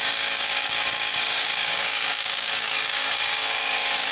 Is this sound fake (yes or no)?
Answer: yes